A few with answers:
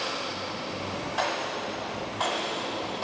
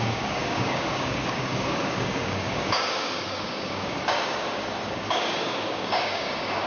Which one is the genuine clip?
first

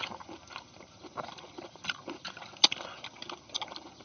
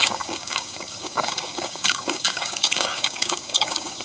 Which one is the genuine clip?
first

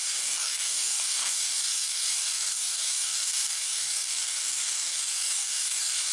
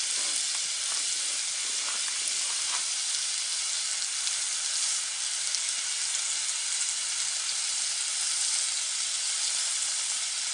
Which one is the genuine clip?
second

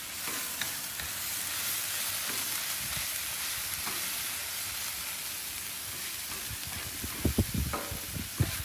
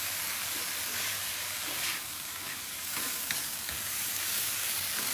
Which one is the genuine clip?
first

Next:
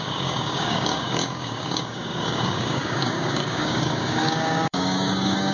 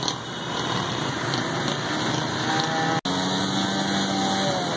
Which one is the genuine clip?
second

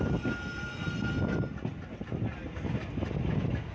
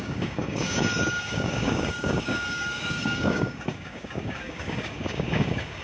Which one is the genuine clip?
first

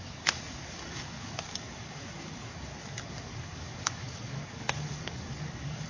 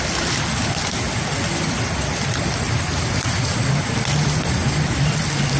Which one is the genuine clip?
second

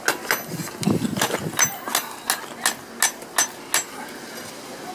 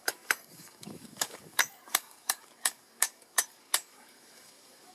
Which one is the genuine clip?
first